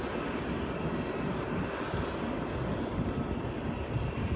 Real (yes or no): yes